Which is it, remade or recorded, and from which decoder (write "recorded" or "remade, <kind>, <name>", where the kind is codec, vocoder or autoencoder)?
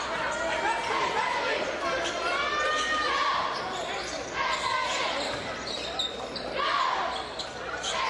recorded